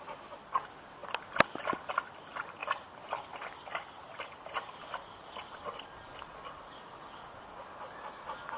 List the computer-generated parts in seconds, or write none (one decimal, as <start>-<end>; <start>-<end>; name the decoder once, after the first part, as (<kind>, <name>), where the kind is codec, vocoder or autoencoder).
none